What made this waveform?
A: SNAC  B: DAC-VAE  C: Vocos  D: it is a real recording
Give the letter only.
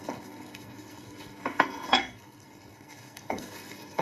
A